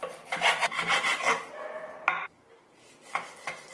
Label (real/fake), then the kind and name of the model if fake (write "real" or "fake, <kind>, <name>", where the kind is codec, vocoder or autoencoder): real